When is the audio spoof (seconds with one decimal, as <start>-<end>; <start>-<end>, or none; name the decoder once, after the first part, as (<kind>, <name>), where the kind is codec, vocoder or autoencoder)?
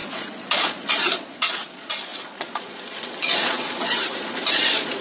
0.0-5.0 (vocoder, Vocos)